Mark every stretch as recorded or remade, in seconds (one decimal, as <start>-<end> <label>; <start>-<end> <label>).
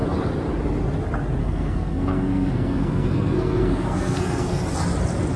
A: 0.0-1.4 recorded; 1.4-4.6 remade; 4.6-5.4 recorded